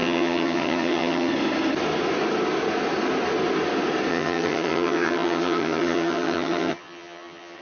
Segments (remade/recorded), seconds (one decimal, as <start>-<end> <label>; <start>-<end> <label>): 0.0-1.3 remade; 1.3-4.1 recorded; 4.1-7.6 remade